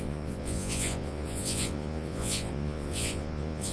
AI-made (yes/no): yes